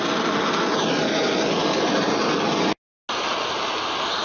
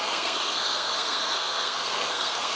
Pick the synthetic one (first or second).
second